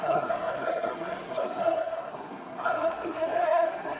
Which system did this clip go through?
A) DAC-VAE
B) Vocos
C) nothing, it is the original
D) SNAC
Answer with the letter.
D